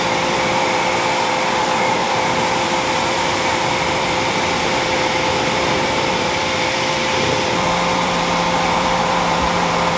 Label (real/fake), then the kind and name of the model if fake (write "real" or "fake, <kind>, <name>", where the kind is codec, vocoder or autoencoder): fake, vocoder, BigVGAN v2